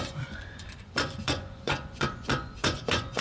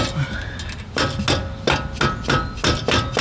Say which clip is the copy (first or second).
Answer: first